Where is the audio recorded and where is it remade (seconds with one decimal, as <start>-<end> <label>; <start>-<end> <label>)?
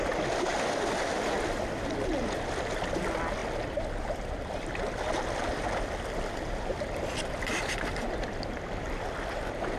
0.0-9.8 recorded